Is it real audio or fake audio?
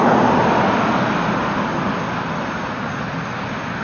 real